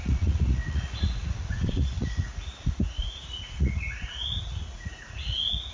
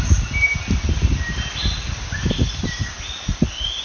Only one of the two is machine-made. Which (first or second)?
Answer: first